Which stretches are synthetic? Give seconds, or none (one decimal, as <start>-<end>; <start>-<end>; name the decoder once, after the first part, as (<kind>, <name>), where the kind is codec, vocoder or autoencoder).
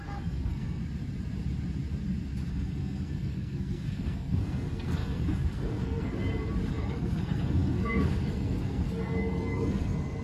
0.0-0.8 (codec, SNAC); 2.5-6.1; 6.7-10.2